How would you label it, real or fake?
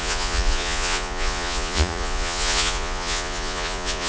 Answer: fake